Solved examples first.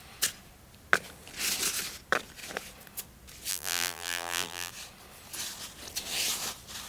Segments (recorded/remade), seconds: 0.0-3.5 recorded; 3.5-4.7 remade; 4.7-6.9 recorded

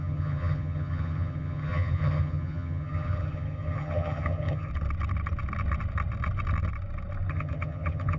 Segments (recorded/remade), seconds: 0.0-4.7 remade; 4.7-7.3 recorded; 7.3-8.2 remade

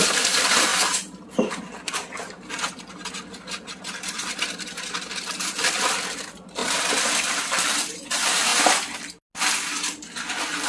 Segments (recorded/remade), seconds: 0.0-0.7 remade; 0.7-5.1 recorded; 5.1-6.6 remade; 6.6-7.3 recorded; 7.3-8.5 remade; 8.5-10.7 recorded

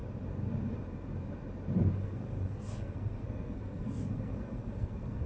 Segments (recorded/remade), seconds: 0.0-2.0 recorded; 2.0-5.3 remade